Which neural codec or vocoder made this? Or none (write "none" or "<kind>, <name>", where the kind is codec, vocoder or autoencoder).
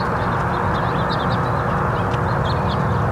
none